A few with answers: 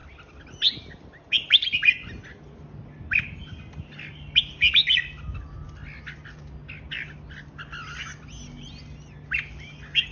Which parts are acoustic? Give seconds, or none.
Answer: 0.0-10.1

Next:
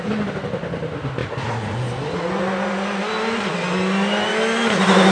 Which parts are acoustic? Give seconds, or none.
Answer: 0.0-5.1

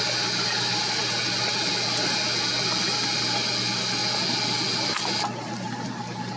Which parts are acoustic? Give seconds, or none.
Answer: 1.0-2.8; 4.0-5.2

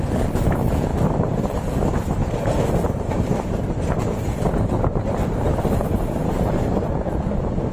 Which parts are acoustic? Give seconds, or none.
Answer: 0.0-0.9; 1.7-2.2; 6.5-7.7

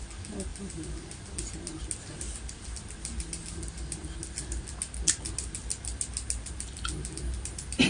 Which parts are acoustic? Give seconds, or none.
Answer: 0.0-7.9

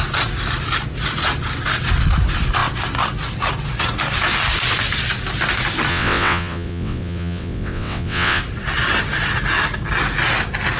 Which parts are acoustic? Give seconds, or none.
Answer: 0.0-5.9; 8.4-10.8

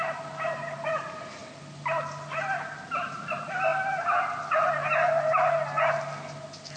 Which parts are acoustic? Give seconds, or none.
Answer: 0.0-6.8